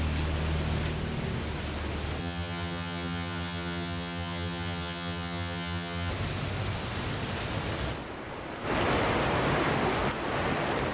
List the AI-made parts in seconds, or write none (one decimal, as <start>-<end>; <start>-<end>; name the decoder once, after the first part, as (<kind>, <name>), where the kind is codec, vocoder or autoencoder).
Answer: 2.2-6.1 (vocoder, HiFi-GAN)